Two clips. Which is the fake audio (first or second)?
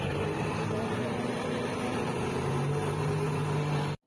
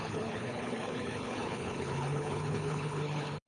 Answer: second